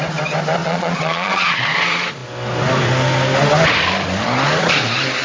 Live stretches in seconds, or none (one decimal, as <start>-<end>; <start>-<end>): 0.0-0.6; 1.6-5.2